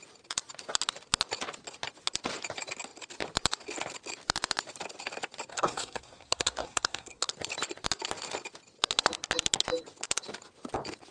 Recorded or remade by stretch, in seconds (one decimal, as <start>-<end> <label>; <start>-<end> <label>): 0.0-5.5 recorded; 5.5-7.3 remade; 7.3-11.1 recorded